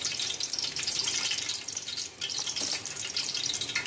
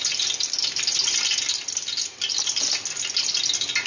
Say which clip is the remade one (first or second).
first